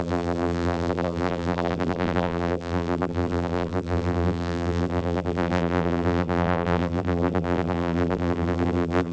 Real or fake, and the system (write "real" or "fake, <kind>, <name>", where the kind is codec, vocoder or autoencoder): fake, vocoder, BigVGAN v2